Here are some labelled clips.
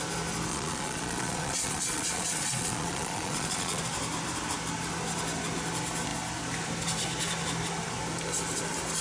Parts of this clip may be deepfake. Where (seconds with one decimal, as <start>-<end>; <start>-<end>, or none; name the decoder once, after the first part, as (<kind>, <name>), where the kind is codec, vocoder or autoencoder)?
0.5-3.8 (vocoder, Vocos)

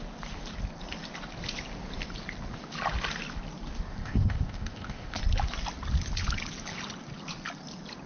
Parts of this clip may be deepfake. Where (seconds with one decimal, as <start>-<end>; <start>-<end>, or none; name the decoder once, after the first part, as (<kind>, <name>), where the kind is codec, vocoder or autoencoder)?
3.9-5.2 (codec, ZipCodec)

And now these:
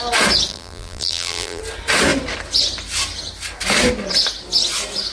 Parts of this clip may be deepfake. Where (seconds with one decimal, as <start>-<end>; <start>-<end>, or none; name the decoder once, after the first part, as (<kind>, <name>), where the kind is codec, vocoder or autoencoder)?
0.5-1.6 (vocoder, BigVGAN v2)